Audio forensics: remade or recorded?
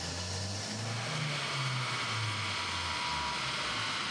recorded